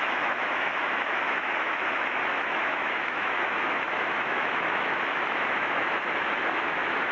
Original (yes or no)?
no